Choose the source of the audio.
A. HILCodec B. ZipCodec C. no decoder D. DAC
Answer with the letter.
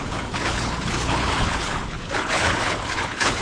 A